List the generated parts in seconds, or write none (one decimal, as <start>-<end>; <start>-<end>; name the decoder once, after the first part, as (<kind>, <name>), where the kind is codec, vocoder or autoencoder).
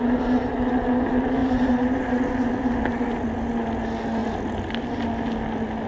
1.4-2.3 (vocoder, BigVGAN v2)